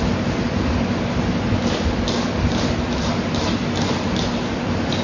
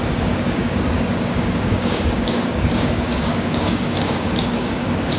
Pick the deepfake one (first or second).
second